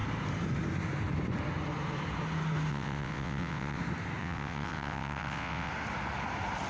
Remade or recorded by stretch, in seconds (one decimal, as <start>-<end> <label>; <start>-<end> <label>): 0.0-2.7 recorded; 2.7-3.8 remade; 3.8-4.2 recorded; 4.2-5.7 remade; 5.7-6.7 recorded